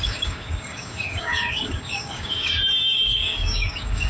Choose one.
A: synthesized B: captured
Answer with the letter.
A